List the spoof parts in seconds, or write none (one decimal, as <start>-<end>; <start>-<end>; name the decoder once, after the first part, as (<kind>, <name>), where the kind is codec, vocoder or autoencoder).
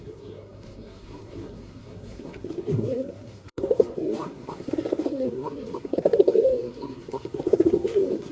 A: 0.0-8.3 (codec, SNAC)